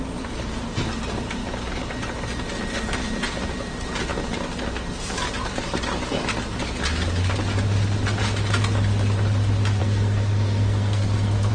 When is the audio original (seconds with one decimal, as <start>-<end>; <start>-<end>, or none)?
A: 0.0-9.8